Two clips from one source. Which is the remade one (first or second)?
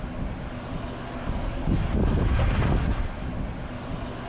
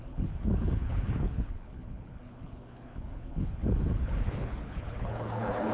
second